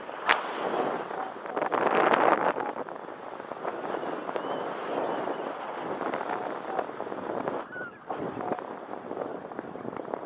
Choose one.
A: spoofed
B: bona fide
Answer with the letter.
B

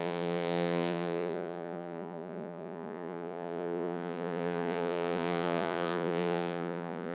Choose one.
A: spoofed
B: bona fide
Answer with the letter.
A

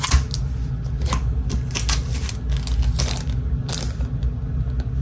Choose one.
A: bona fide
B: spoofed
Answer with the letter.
A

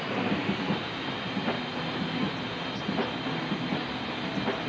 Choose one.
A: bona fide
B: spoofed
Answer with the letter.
A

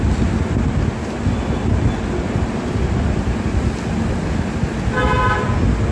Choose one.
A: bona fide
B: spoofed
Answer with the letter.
A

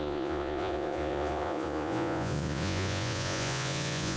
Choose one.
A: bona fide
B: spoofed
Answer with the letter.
B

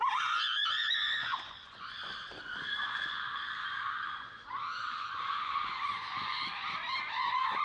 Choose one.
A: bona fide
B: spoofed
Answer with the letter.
B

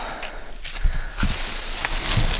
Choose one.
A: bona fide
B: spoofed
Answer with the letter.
A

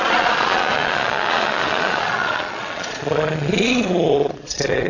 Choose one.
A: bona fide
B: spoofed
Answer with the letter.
B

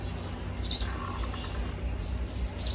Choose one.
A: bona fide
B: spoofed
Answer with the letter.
A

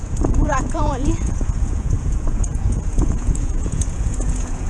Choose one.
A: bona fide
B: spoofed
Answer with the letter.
B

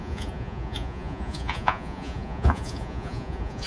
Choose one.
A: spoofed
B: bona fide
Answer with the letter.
A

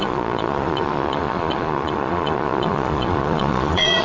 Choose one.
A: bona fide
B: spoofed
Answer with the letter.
B